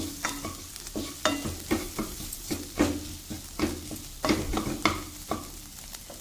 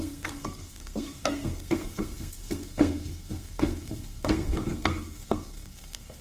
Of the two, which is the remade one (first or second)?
second